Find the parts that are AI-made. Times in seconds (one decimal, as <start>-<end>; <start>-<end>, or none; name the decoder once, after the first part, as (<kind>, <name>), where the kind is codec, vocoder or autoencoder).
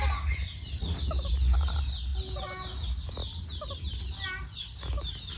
none